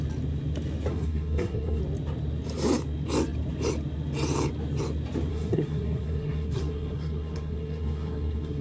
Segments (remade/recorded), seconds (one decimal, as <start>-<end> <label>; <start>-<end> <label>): 0.0-0.9 recorded; 0.9-1.8 remade; 1.8-5.3 recorded; 5.3-8.6 remade